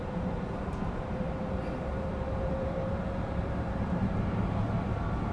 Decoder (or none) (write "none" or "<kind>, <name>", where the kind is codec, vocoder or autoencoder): vocoder, BigVGAN v2